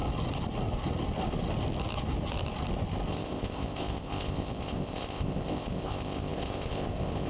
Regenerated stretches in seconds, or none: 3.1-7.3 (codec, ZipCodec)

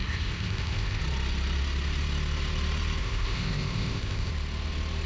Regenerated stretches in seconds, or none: 0.0-1.0 (codec, ZipCodec); 3.0-4.3

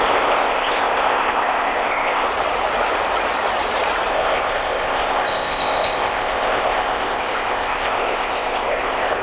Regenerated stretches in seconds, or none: 0.0-2.3 (codec, ZipCodec); 4.1-9.2

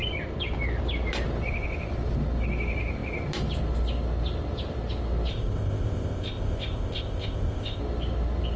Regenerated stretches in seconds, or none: 5.3-7.8 (codec, ZipCodec)